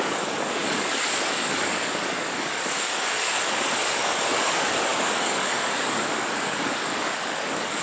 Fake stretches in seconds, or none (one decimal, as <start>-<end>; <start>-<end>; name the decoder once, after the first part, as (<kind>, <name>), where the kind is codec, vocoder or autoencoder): 0.0-7.8 (codec, DAC)